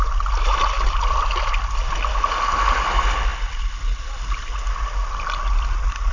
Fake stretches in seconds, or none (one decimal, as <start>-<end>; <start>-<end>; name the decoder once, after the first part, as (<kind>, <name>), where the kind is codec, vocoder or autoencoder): none